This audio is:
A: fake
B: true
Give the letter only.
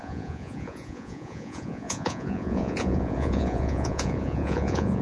A